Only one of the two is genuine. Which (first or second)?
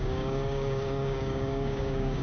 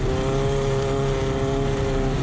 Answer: second